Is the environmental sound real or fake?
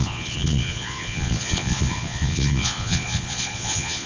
fake